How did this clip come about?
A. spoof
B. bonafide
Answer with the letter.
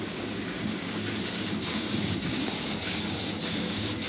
A